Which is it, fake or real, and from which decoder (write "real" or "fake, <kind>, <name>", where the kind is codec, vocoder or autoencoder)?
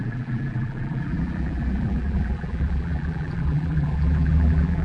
fake, vocoder, BigVGAN v2